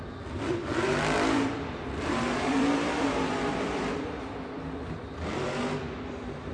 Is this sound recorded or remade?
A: remade